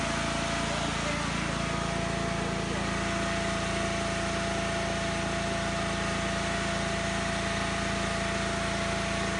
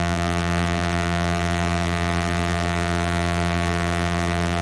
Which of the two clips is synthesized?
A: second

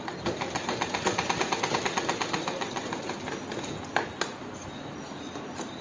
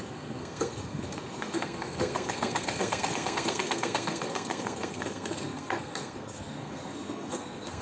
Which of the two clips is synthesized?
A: second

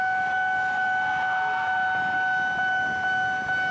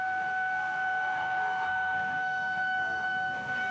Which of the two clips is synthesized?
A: second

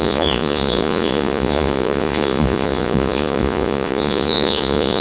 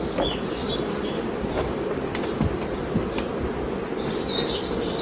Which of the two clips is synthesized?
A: first